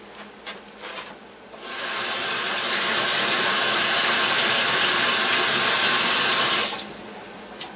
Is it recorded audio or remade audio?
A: recorded